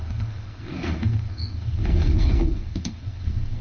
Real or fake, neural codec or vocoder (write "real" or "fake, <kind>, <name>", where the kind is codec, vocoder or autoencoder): fake, codec, SNAC